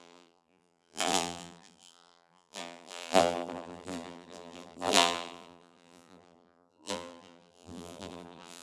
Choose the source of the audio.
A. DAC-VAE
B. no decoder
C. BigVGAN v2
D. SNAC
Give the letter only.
C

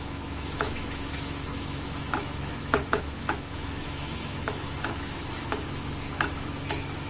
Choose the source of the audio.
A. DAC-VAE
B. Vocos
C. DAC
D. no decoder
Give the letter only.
A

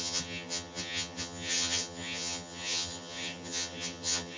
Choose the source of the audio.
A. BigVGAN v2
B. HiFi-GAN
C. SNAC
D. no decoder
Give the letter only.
B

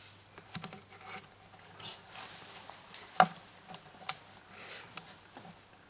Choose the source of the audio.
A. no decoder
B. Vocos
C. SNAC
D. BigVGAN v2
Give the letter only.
A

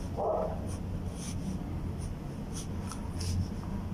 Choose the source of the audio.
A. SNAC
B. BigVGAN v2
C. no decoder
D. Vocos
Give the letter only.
C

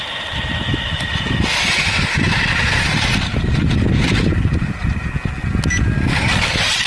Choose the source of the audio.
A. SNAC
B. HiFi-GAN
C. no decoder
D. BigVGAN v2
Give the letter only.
C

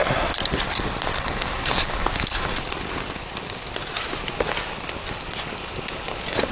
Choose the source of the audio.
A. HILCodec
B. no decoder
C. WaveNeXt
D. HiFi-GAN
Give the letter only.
B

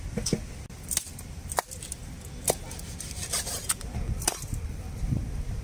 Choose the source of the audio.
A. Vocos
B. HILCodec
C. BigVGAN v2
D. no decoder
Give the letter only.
C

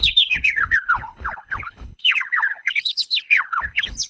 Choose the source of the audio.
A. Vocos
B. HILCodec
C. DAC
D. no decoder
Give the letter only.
B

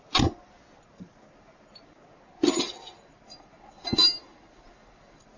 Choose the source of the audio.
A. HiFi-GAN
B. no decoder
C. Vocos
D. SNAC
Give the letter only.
B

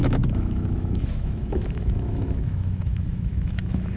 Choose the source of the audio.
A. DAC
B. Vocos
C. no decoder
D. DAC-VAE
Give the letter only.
D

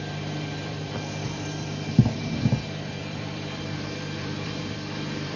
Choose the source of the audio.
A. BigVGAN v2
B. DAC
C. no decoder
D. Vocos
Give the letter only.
A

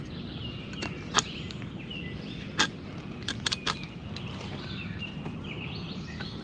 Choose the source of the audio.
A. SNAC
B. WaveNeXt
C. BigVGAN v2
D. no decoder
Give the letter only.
D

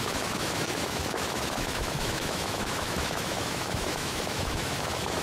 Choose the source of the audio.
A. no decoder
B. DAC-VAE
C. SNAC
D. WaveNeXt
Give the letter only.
B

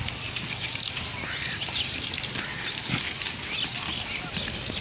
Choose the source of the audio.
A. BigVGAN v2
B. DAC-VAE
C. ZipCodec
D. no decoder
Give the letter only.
D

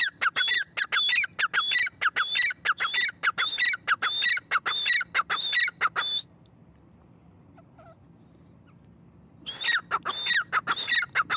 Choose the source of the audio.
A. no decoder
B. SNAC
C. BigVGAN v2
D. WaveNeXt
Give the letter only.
A